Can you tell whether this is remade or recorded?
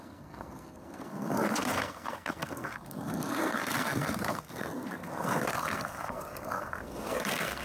remade